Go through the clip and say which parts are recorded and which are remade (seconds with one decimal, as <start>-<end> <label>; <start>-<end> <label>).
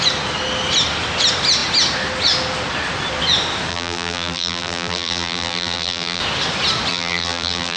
0.0-3.7 recorded; 3.7-6.2 remade; 6.2-6.9 recorded; 6.9-7.8 remade